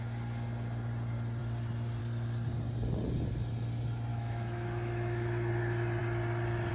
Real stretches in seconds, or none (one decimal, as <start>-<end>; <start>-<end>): 0.0-4.1; 5.5-6.7